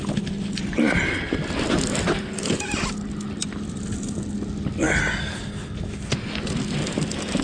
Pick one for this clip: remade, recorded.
recorded